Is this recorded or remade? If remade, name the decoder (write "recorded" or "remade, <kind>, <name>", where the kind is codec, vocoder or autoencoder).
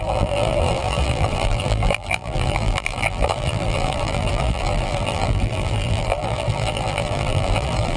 remade, vocoder, BigVGAN v2